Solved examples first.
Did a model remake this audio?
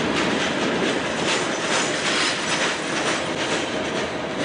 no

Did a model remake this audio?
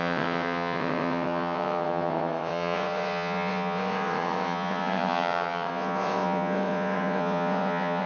yes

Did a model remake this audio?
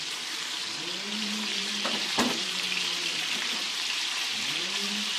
yes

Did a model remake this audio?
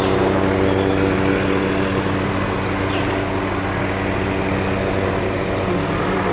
no